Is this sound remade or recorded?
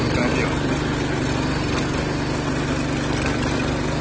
recorded